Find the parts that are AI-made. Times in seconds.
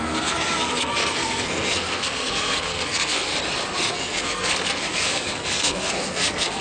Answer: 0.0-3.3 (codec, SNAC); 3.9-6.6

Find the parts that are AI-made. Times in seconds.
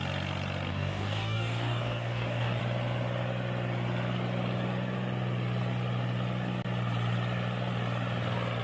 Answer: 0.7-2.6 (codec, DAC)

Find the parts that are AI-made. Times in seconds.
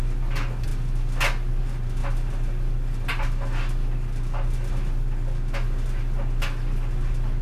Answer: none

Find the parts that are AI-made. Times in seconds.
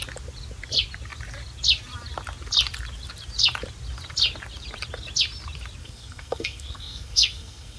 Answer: 5.8-7.8 (codec, SNAC)